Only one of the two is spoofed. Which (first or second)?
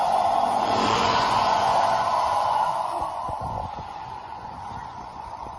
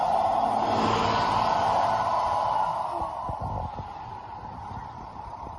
first